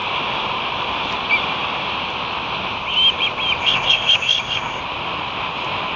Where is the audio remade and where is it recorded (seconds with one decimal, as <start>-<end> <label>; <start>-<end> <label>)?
0.0-3.6 recorded; 3.6-4.8 remade; 4.8-6.0 recorded